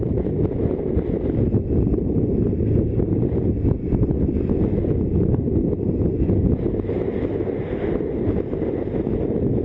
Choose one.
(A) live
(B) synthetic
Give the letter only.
A